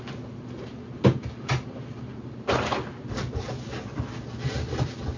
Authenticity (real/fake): real